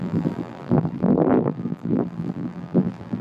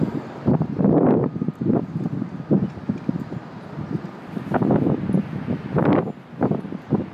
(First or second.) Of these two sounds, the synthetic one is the first